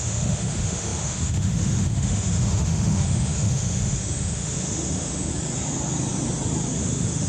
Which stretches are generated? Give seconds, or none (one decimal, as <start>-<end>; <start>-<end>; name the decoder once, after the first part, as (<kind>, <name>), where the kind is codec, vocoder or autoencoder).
0.0-5.3 (autoencoder, DAC-VAE); 6.8-7.3